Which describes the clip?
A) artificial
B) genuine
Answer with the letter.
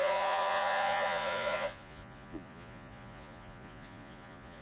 A